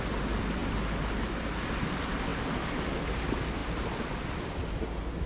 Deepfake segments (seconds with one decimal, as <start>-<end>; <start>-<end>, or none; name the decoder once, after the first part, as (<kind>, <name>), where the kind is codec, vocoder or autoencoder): none